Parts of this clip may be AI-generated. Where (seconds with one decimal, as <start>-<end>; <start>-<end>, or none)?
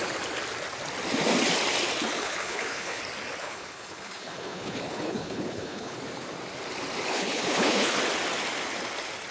2.2-3.0; 3.4-6.0; 7.1-8.0